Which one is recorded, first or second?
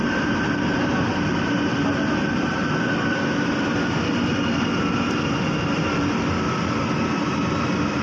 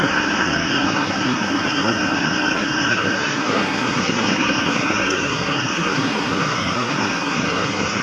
first